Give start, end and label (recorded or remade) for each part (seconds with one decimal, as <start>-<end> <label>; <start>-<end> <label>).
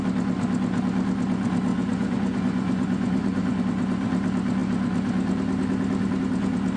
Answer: 0.0-1.7 recorded; 1.7-3.6 remade; 3.6-6.8 recorded